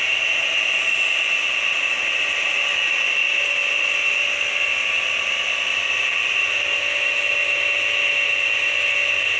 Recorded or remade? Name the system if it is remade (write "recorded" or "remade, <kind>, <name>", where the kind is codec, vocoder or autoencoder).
recorded